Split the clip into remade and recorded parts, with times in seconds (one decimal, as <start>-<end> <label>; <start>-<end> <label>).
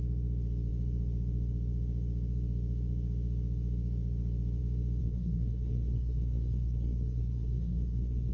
0.0-5.0 recorded; 5.0-8.3 remade